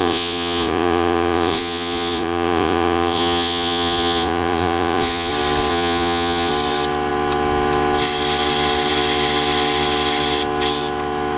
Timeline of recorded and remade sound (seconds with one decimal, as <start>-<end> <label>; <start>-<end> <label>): 0.0-5.3 remade; 5.3-5.7 recorded; 5.7-6.5 remade; 6.5-11.4 recorded